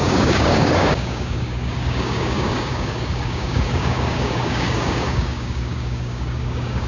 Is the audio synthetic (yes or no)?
yes